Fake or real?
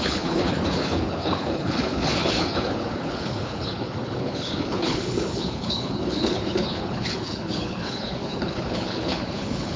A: fake